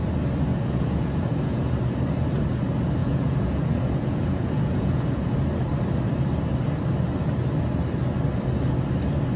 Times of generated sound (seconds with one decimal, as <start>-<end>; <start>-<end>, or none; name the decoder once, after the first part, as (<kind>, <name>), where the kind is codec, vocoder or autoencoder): 0.5-1.7 (vocoder, Vocos); 3.0-5.4